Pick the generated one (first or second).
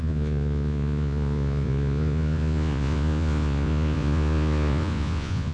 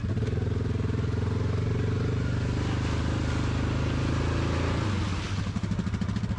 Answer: first